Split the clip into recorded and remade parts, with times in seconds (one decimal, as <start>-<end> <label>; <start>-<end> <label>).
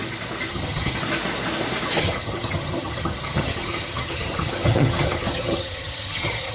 0.0-0.5 recorded; 0.5-1.0 remade; 1.0-2.0 recorded; 2.0-6.5 remade